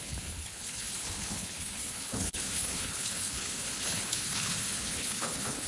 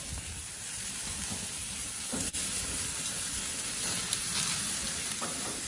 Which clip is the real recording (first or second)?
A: second